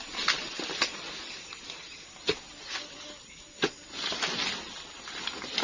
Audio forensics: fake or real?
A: real